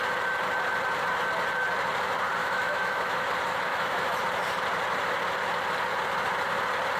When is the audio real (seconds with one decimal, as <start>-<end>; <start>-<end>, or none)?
0.0-2.4; 3.3-3.7; 4.2-7.0